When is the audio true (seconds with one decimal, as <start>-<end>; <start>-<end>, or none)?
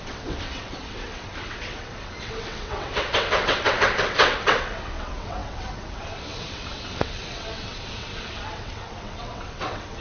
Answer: none